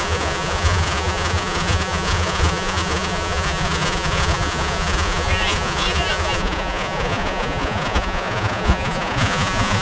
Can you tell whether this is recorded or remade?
remade